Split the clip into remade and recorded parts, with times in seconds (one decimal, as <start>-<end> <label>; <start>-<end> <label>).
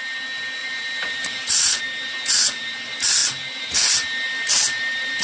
0.0-0.6 recorded; 0.6-1.8 remade; 1.8-5.2 recorded